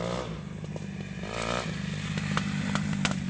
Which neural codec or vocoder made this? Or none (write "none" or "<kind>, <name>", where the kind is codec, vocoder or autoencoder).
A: none